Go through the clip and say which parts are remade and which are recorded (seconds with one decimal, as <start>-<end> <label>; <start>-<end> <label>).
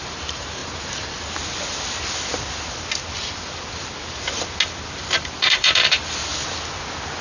0.0-0.6 remade; 0.6-4.9 recorded; 4.9-6.3 remade; 6.3-7.2 recorded